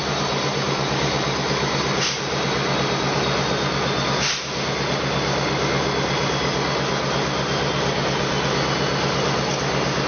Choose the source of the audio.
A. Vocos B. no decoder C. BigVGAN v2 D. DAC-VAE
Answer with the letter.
B